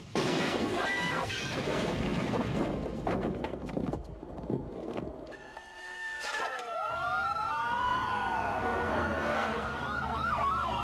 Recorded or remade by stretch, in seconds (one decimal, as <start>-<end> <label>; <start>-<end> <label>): 0.0-10.8 remade